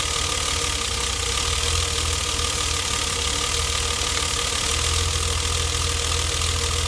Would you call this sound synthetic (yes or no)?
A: no